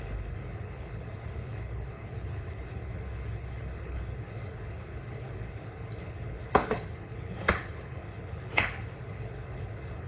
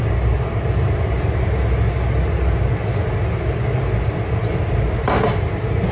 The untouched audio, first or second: second